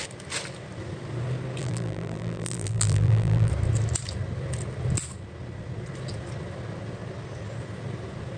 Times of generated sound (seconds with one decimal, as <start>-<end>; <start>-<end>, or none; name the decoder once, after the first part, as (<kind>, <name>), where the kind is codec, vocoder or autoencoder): 1.6-3.5 (vocoder, BigVGAN v2)